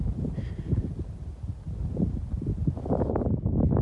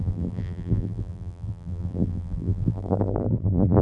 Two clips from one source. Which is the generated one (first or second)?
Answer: second